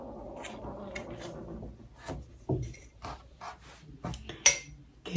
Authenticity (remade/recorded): recorded